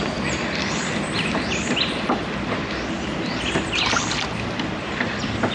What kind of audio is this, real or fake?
real